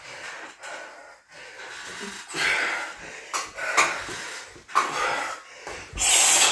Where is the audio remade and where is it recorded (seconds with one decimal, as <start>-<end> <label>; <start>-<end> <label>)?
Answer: 0.0-6.5 recorded